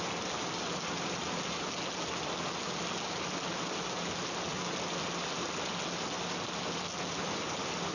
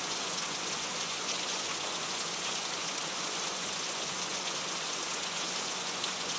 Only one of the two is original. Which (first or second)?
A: first